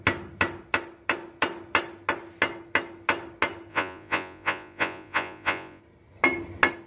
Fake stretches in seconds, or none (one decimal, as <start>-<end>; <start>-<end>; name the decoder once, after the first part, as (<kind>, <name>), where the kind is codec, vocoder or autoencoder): 3.7-5.8 (vocoder, Vocos)